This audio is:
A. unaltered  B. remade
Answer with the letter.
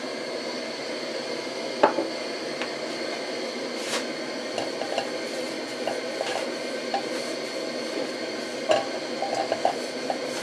A